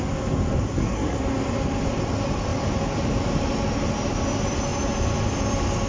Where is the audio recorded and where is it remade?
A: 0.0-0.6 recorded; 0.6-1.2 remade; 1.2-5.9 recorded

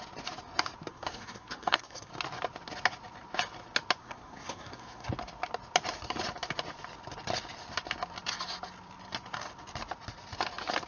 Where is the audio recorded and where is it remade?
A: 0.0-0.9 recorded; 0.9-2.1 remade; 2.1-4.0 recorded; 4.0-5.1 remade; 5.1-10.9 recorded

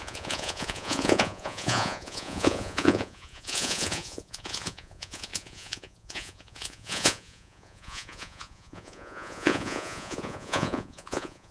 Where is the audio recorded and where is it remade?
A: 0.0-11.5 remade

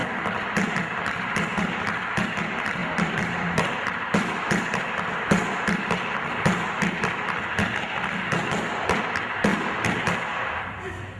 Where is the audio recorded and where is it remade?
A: 0.0-0.7 remade; 0.7-2.8 recorded; 2.8-7.9 remade; 7.9-9.5 recorded; 9.5-11.2 remade

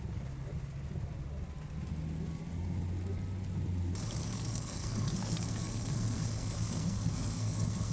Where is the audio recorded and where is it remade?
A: 0.0-4.2 recorded; 4.2-7.9 remade

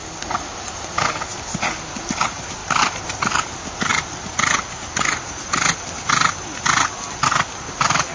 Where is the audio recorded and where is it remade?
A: 0.0-8.1 recorded

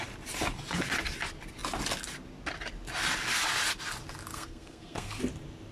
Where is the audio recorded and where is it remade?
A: 0.0-4.3 recorded; 4.3-5.2 remade; 5.2-5.7 recorded